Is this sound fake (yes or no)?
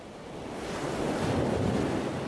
no